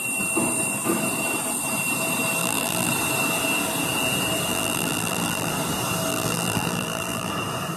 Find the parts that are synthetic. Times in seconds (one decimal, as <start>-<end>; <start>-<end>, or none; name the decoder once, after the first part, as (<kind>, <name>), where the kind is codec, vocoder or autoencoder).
2.4-2.9 (vocoder, BigVGAN v2); 4.5-5.5; 6.1-7.3